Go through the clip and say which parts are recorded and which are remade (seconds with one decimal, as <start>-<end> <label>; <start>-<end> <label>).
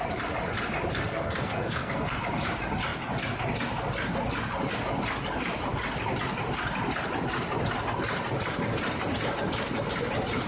0.0-1.0 recorded; 1.0-2.2 remade; 2.2-10.5 recorded